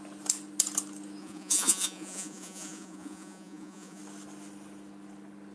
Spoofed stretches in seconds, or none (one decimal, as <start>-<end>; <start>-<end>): 1.2-4.0